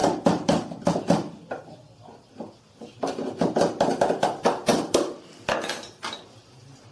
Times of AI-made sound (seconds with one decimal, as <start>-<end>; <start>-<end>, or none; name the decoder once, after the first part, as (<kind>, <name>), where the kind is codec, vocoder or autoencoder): none